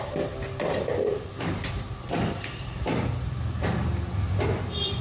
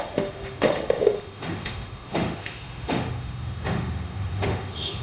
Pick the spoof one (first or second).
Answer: second